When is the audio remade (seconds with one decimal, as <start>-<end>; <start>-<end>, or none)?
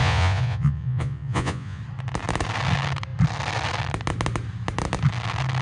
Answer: 0.0-1.8